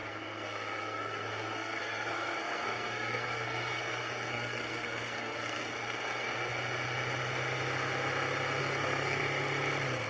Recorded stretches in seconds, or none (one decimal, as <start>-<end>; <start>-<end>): 6.5-8.6; 9.2-10.1